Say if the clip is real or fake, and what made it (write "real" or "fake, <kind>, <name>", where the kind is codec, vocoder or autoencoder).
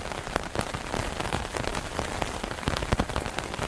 real